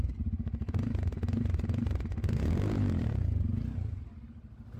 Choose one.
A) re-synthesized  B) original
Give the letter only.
B